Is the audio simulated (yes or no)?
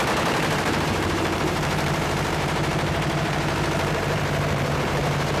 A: yes